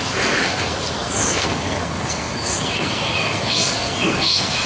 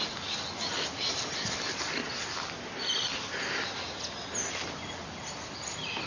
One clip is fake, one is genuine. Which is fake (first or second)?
first